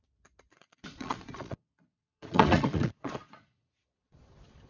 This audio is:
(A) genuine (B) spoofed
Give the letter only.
B